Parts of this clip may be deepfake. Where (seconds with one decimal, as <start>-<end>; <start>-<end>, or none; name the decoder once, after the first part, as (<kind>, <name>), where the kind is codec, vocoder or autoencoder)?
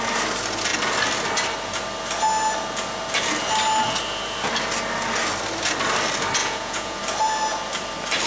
6.4-7.0 (vocoder, Vocos)